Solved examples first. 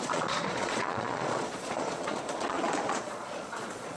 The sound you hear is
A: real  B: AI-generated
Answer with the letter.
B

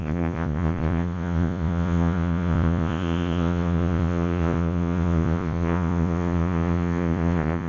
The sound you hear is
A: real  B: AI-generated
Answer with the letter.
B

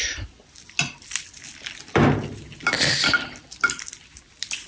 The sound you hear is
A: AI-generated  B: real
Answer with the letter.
B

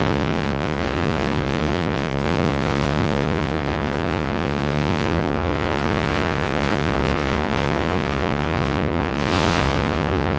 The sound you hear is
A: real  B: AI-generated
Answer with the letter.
B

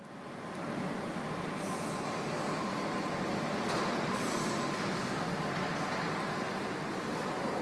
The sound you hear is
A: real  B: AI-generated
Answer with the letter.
A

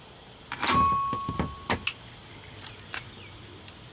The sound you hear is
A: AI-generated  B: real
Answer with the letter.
B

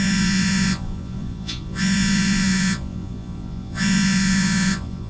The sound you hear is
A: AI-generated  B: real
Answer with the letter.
A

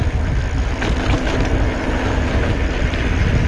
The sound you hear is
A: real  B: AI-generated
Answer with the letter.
A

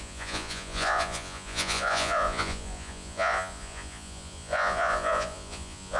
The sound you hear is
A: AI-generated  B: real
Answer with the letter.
A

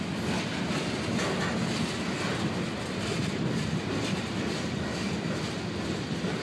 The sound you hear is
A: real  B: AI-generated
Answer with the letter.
A